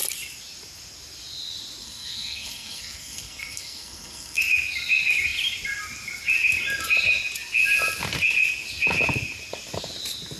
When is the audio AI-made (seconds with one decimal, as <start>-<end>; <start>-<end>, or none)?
1.8-4.4